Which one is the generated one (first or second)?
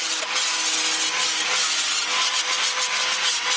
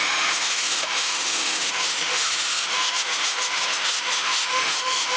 second